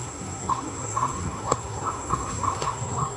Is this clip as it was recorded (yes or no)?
no